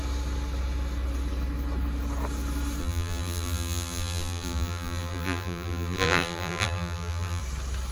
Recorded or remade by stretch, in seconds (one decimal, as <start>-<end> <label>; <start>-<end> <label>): 0.0-2.8 recorded; 2.8-7.4 remade; 7.4-7.9 recorded